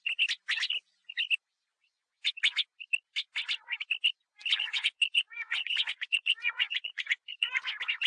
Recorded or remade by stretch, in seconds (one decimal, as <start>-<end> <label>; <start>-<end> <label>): 0.0-1.7 recorded; 1.7-2.3 remade; 2.3-4.5 recorded; 4.5-7.6 remade; 7.6-8.1 recorded